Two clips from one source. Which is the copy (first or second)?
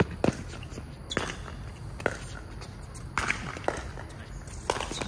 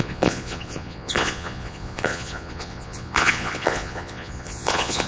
second